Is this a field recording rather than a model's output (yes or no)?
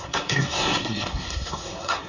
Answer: no